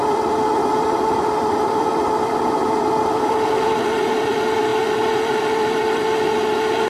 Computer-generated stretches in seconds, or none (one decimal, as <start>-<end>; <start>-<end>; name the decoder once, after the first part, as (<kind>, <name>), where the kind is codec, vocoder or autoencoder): 0.7-2.9 (vocoder, BigVGAN v2)